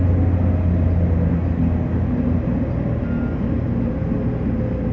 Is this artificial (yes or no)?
no